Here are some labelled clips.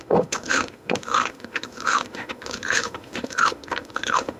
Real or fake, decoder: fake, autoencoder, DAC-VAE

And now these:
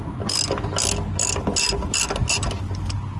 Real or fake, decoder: real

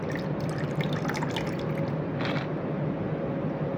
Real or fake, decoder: real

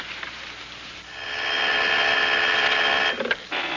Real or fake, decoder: real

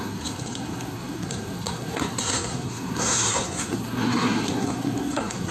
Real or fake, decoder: fake, codec, SNAC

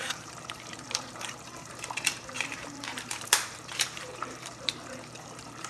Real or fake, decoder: fake, vocoder, BigVGAN v2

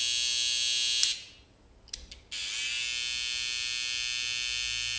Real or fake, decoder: real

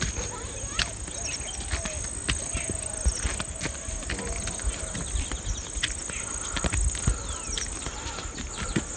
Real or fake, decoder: real